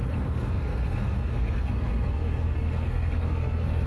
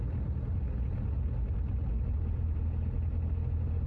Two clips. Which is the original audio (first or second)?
second